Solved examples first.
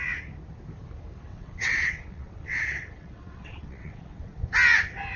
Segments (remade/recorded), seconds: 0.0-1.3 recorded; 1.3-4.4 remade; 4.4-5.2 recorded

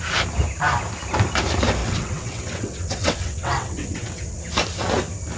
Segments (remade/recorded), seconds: 0.0-1.8 recorded; 1.8-4.4 remade; 4.4-5.4 recorded

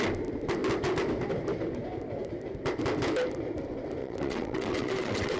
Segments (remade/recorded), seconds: 0.0-4.0 recorded; 4.0-5.4 remade